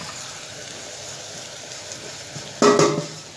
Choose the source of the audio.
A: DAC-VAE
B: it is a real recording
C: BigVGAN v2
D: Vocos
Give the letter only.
B